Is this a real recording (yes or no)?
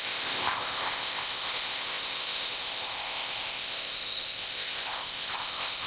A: no